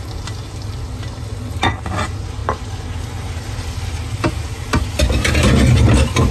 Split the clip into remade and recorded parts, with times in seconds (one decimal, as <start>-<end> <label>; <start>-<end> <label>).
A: 0.0-6.3 recorded